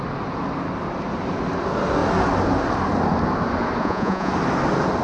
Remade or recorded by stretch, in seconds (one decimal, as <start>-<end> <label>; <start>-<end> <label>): 0.0-3.8 recorded; 3.8-4.3 remade; 4.3-5.0 recorded